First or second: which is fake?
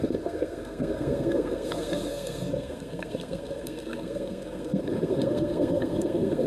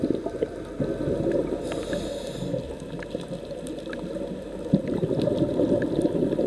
first